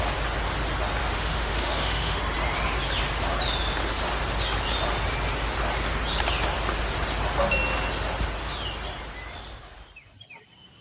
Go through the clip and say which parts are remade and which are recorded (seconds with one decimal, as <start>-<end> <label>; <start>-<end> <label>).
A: 0.0-1.0 recorded; 1.0-2.2 remade; 2.2-10.8 recorded